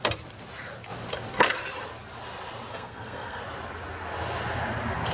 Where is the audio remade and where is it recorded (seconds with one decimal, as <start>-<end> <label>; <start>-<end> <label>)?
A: 0.0-2.7 recorded; 2.7-3.4 remade; 3.4-5.1 recorded